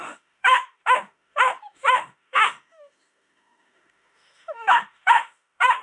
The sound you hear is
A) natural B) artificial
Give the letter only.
B